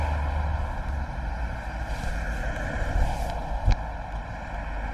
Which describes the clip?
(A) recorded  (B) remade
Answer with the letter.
A